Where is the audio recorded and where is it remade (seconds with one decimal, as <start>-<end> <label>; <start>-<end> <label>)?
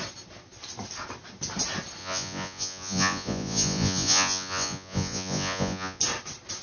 0.0-2.0 recorded; 2.0-6.0 remade; 6.0-6.6 recorded